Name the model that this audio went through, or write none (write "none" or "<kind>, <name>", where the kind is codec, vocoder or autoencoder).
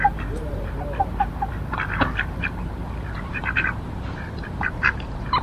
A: vocoder, BigVGAN v2